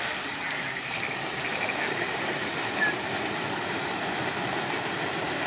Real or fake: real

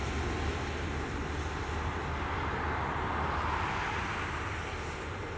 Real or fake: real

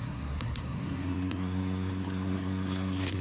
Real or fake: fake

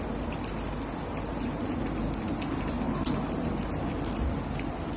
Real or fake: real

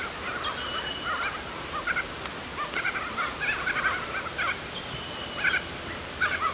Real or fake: real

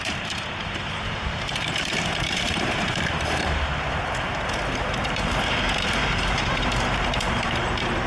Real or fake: fake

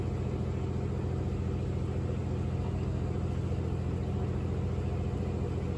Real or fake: real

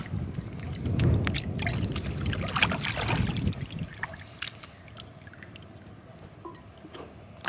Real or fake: real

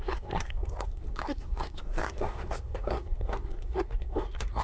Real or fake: fake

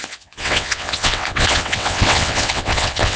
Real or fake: fake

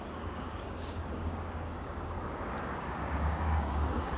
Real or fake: fake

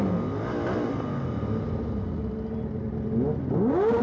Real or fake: real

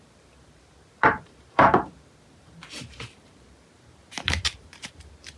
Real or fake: fake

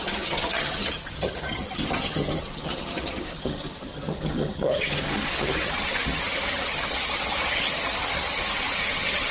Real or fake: fake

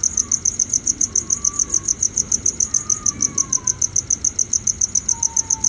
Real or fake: real